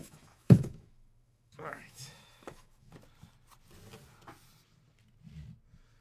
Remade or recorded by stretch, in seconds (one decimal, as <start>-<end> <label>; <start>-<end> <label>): 0.0-2.9 remade; 2.9-6.0 recorded